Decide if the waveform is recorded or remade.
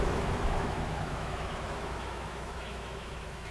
remade